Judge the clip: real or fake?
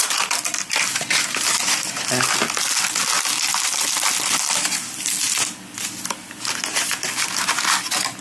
real